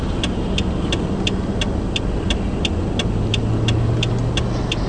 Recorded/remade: recorded